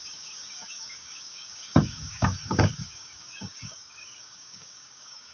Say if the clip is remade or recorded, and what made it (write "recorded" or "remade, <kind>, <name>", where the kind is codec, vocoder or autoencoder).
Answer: remade, codec, DAC